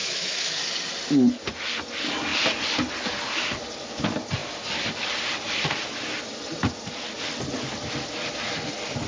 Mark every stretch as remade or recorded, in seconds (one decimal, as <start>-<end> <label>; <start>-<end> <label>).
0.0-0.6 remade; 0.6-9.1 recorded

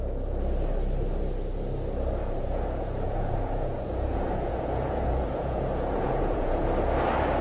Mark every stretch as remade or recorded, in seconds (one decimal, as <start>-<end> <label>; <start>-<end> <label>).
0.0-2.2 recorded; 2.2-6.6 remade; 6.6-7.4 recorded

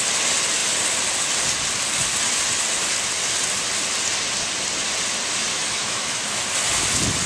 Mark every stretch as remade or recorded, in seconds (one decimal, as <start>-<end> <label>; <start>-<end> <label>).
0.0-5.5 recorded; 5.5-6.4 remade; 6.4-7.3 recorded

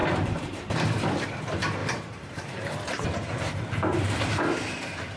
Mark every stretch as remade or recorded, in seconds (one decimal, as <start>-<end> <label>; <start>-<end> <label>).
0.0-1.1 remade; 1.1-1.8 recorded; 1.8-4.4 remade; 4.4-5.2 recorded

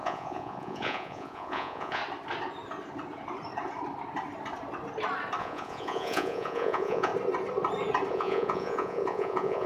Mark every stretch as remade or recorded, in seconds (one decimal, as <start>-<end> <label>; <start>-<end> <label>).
0.0-2.0 remade; 2.0-5.4 recorded; 5.4-7.1 remade; 7.1-8.1 recorded; 8.1-9.7 remade